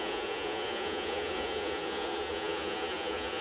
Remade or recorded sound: remade